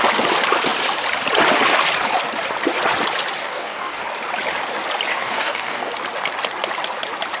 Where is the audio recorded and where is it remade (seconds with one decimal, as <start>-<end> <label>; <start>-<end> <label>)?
0.0-3.4 recorded; 3.4-4.0 remade; 4.0-5.1 recorded; 5.1-5.9 remade; 5.9-7.4 recorded